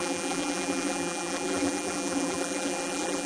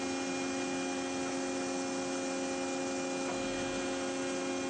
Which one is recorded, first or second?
second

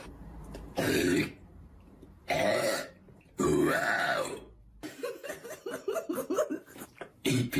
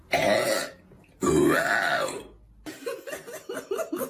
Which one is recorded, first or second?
second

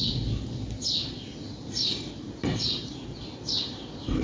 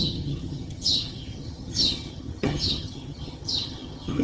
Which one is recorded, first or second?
first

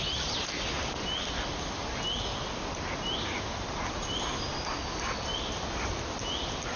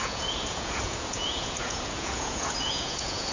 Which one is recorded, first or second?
first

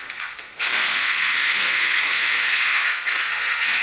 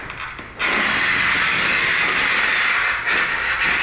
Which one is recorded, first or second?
second